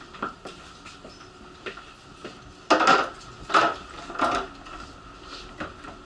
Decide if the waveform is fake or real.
real